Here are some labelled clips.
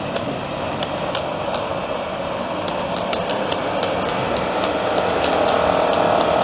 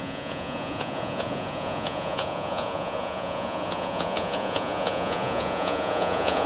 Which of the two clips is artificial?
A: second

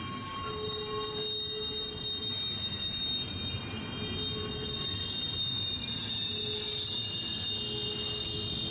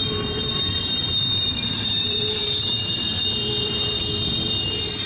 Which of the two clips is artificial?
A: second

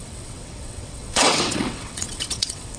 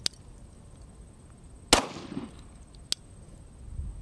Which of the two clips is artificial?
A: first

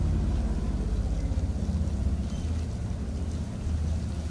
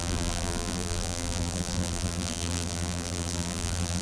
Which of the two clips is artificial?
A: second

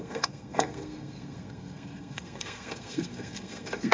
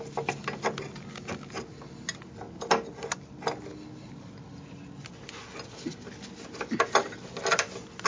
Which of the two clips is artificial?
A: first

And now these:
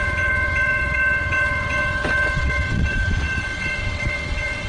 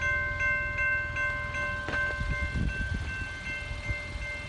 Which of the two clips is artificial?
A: first